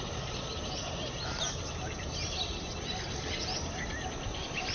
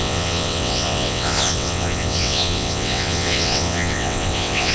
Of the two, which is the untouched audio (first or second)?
first